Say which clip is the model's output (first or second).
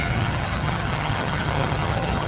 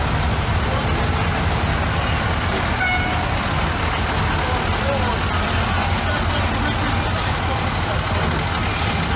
first